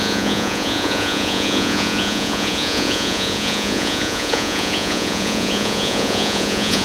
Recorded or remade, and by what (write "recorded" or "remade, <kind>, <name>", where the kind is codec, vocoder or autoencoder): remade, vocoder, Vocos